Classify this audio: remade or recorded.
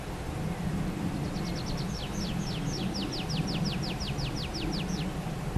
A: recorded